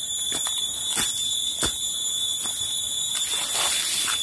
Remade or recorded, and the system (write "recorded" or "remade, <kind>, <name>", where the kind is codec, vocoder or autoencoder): recorded